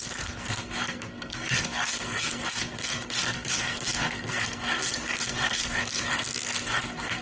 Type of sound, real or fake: fake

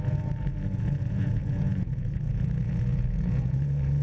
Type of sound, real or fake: fake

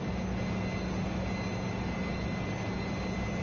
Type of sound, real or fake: real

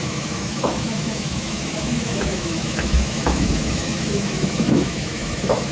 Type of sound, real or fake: fake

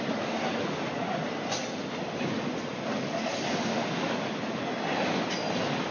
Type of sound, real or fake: real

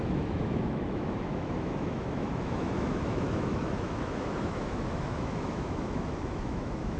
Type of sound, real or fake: fake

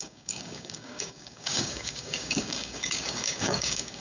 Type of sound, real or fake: fake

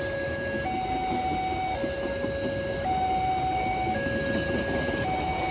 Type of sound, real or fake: real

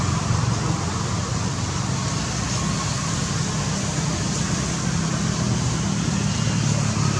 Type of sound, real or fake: real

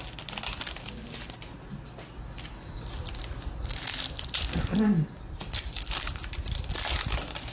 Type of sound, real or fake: real